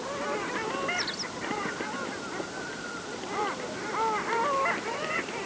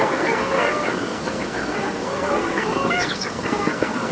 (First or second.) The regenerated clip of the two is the second